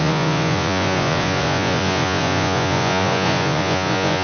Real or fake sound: fake